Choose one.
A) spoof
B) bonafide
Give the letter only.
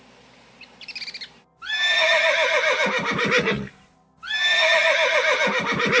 B